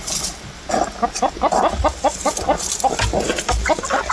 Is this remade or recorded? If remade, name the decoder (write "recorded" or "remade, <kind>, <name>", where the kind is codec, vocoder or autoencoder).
recorded